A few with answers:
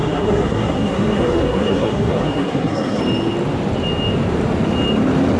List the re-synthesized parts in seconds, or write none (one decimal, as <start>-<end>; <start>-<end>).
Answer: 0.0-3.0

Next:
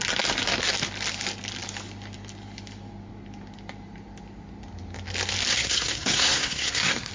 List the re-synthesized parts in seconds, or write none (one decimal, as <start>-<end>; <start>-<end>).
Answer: 5.5-7.1

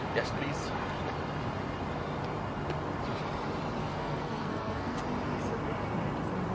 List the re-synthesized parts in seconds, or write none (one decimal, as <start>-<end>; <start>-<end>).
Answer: 3.8-5.0

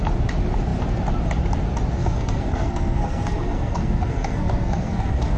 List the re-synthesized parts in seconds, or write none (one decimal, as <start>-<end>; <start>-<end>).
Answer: 2.0-5.4

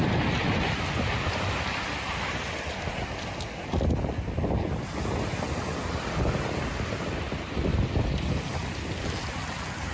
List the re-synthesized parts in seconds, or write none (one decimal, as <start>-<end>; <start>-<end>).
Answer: none

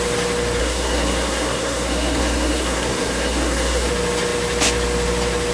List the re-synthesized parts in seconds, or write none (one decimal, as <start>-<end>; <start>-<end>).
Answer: 0.6-3.9